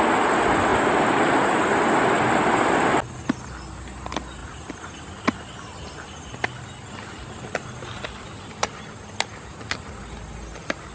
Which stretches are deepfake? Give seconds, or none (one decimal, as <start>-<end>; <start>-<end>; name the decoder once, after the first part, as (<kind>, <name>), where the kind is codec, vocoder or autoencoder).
none